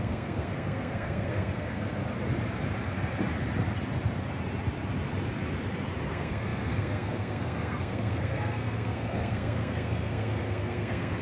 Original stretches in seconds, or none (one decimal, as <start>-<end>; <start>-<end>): 2.0-6.1